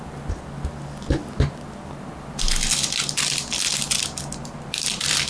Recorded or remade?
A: recorded